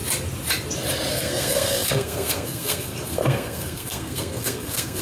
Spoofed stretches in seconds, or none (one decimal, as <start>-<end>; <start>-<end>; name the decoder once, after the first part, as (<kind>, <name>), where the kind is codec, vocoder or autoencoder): 1.1-5.0 (codec, SNAC)